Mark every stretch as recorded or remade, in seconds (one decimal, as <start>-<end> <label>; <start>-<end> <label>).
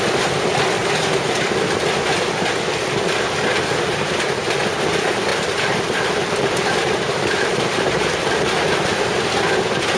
0.0-0.8 recorded; 0.8-1.5 remade; 1.5-5.3 recorded; 5.3-9.2 remade; 9.2-10.0 recorded